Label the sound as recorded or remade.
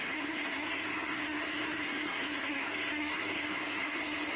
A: remade